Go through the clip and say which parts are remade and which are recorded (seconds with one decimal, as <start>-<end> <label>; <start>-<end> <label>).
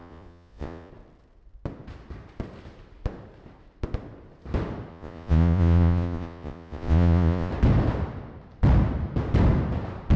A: 0.0-0.9 remade; 0.9-4.9 recorded; 4.9-7.5 remade; 7.5-10.2 recorded